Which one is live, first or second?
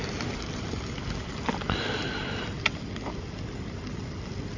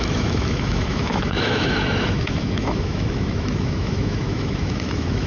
first